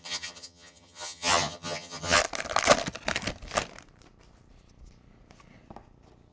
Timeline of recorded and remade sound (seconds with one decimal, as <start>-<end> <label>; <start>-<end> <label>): 0.0-2.2 remade; 2.2-6.3 recorded